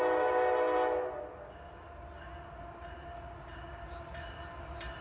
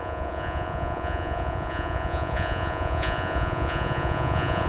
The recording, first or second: first